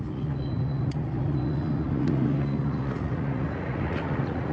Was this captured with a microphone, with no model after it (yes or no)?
no